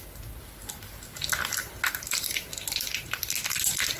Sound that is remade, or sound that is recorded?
recorded